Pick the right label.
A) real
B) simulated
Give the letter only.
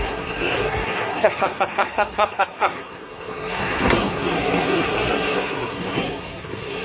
B